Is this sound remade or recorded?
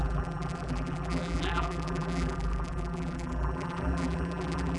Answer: remade